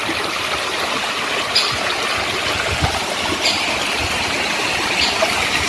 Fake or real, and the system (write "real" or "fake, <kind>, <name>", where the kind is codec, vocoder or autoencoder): real